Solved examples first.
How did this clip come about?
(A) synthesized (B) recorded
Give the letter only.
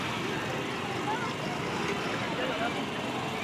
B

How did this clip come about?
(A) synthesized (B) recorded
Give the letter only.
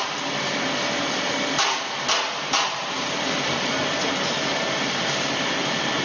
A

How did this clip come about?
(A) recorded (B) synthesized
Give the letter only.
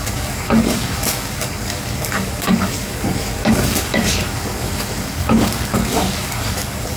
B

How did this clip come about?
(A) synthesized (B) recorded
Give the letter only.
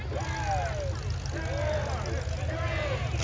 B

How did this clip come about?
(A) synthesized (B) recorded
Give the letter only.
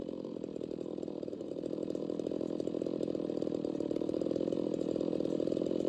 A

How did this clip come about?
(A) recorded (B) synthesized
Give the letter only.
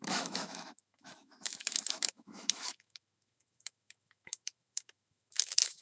B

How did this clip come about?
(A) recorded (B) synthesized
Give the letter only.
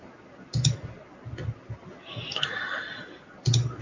A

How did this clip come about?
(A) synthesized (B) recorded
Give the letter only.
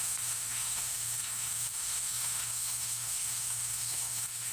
A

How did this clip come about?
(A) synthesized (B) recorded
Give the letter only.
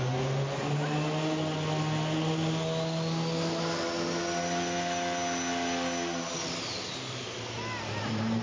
B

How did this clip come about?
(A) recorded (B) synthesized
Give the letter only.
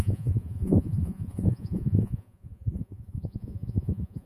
B